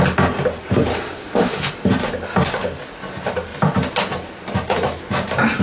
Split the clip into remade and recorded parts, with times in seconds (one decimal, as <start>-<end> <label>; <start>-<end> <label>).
0.0-0.9 recorded; 0.9-1.7 remade; 1.7-5.6 recorded